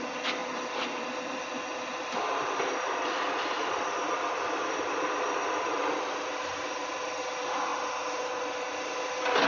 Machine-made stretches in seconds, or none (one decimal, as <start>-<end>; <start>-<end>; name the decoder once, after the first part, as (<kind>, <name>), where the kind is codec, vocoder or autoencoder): 0.0-7.7 (vocoder, BigVGAN v2); 8.2-9.5